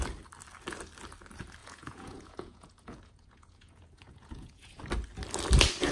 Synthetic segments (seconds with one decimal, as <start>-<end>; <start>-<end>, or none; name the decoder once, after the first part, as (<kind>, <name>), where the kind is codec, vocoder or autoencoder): 1.6-4.8 (vocoder, Vocos)